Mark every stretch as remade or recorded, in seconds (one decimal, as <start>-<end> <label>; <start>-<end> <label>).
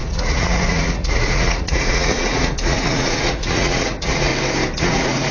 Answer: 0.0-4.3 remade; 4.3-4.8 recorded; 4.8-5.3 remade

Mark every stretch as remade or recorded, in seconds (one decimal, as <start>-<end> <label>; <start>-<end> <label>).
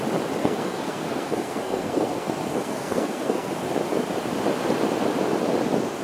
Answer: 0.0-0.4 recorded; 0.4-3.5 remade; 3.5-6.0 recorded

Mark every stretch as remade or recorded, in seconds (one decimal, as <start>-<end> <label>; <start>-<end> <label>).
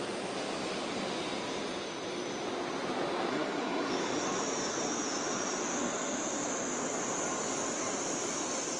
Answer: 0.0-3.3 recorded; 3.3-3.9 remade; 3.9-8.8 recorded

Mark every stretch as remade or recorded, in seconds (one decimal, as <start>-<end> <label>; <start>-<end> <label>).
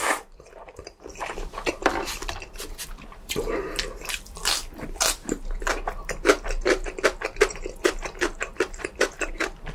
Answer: 0.0-4.6 remade; 4.6-5.6 recorded; 5.6-9.7 remade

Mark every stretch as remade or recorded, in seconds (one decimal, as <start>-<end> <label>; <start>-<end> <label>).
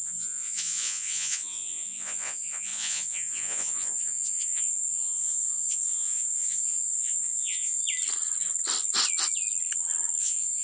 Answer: 0.0-7.8 remade; 7.8-10.2 recorded; 10.2-10.6 remade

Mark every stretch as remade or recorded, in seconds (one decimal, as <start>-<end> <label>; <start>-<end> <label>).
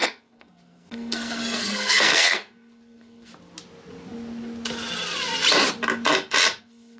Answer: 0.0-3.3 remade; 3.3-6.6 recorded; 6.6-7.0 remade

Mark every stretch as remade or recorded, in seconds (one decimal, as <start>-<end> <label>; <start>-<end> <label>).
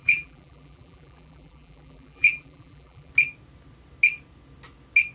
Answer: 0.0-3.1 remade; 3.1-5.1 recorded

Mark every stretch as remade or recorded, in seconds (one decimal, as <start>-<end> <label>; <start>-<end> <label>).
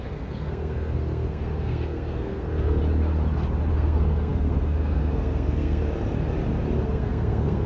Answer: 0.0-2.8 remade; 2.8-3.7 recorded; 3.7-5.8 remade; 5.8-6.8 recorded; 6.8-7.7 remade